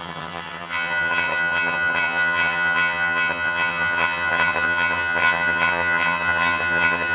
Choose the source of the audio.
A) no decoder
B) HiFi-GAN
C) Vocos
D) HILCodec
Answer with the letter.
B